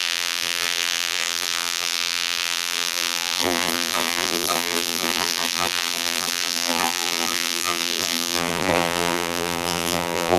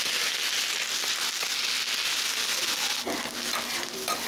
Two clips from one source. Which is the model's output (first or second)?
first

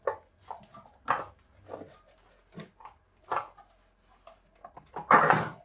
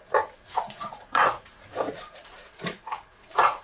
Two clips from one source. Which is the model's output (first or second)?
second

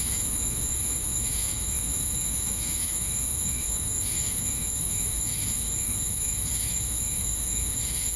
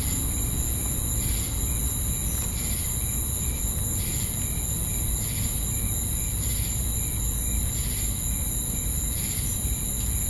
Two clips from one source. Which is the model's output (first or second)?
first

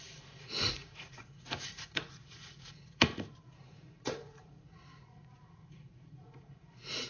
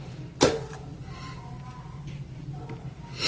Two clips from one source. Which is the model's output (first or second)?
first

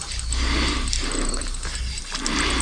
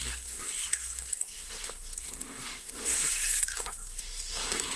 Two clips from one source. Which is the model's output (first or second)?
second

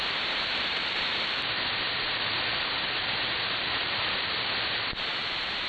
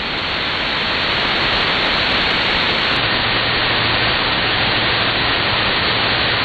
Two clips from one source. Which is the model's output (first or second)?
first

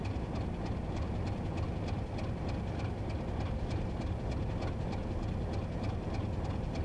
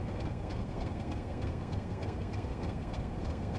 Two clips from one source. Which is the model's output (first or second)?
second